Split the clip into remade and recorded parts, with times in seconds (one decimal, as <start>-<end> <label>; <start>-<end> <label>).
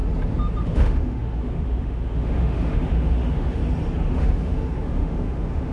0.0-0.6 recorded; 0.6-3.6 remade; 3.6-4.2 recorded; 4.2-5.7 remade